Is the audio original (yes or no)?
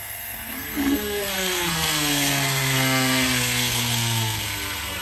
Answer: no